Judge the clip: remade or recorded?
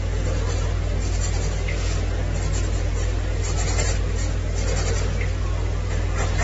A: recorded